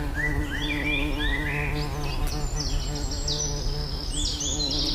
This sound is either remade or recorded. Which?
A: recorded